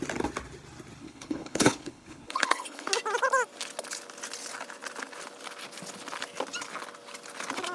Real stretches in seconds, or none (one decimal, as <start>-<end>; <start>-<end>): 0.0-1.0; 2.9-7.7